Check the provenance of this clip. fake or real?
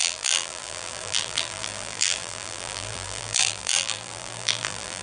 fake